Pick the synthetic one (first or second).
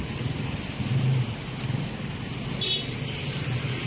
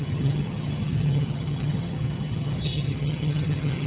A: second